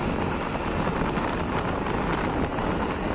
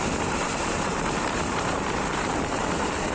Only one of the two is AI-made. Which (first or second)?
second